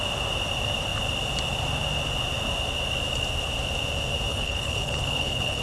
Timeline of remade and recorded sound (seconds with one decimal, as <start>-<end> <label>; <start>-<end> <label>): 0.0-4.3 recorded; 4.3-5.6 remade